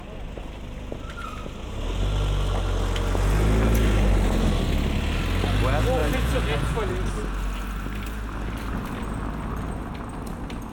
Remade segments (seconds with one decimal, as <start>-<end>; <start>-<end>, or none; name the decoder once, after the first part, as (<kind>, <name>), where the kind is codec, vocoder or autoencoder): 6.0-6.9 (vocoder, Vocos)